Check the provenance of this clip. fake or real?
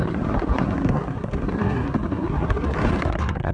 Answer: fake